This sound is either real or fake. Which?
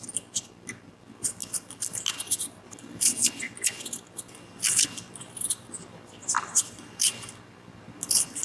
real